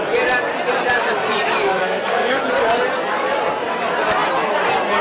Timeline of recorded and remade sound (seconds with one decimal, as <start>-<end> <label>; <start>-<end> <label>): 0.0-1.7 recorded; 1.7-2.4 remade; 2.4-5.0 recorded